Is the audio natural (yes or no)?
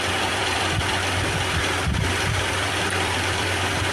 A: no